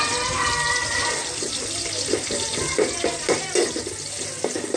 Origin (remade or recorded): recorded